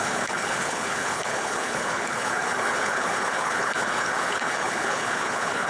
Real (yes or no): no